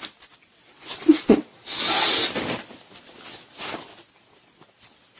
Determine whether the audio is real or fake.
real